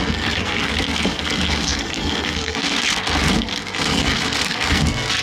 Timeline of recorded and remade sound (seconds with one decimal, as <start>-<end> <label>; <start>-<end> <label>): 0.0-5.2 remade